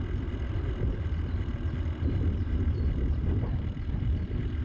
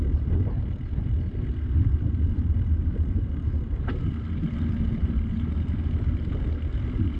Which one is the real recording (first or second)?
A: second